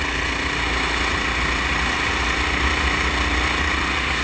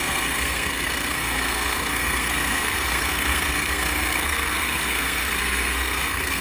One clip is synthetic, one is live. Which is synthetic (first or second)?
second